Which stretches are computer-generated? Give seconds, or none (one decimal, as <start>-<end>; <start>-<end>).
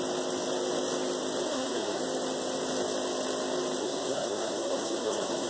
1.5-2.0; 3.8-5.5